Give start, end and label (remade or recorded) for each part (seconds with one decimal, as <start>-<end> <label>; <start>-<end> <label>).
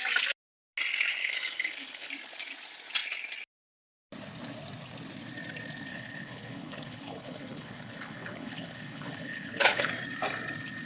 0.0-1.2 recorded; 1.2-2.1 remade; 2.1-5.9 recorded; 5.9-9.9 remade; 9.9-10.9 recorded